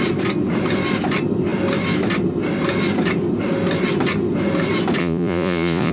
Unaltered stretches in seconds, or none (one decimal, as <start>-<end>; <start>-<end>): 0.0-5.0